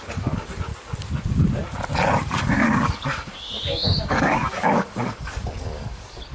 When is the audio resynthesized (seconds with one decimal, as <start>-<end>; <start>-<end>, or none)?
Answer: 0.0-0.7; 2.2-6.3